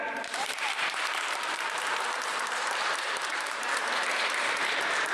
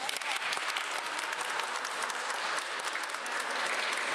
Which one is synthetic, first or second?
first